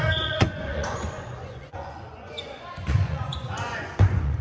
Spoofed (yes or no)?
yes